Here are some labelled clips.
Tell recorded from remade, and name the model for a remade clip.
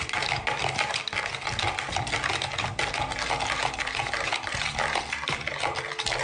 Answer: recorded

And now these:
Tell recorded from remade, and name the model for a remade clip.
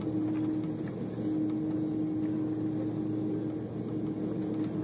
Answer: recorded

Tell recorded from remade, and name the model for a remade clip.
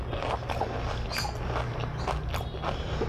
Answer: recorded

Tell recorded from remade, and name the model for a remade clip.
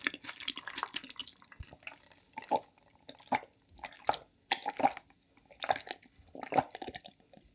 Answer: recorded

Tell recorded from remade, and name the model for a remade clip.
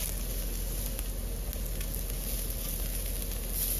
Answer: recorded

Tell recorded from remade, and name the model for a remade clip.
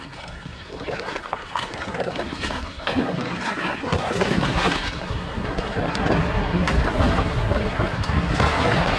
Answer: remade, codec, SNAC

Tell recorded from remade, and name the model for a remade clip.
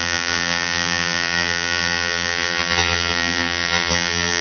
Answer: remade, vocoder, BigVGAN v2